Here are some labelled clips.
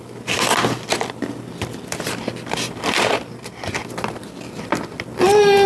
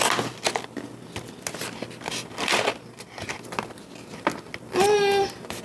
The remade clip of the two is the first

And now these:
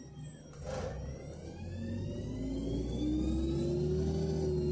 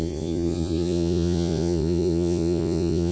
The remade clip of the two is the second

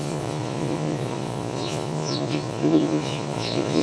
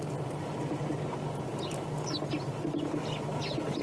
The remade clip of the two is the first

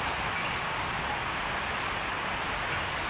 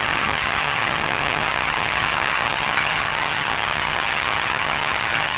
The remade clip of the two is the second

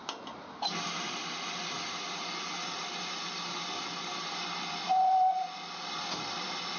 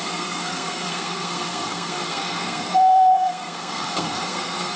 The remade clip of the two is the second